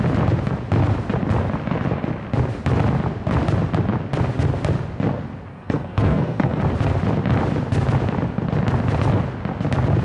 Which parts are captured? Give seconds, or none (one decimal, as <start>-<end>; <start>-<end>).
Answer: 0.0-5.5; 6.6-10.0